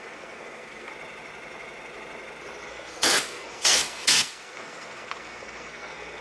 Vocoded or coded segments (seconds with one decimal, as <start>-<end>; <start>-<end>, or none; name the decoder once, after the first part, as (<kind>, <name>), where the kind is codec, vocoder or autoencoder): 0.0-0.9 (codec, SNAC); 2.7-6.2